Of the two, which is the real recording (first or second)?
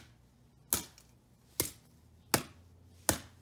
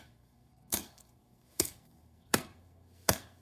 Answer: first